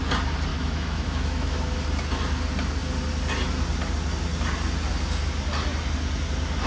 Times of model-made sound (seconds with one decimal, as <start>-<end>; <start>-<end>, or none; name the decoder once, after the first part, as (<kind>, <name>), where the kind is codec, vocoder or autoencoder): 0.5-1.8 (autoencoder, DAC-VAE)